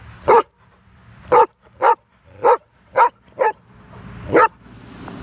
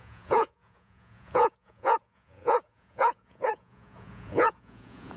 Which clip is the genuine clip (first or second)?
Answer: first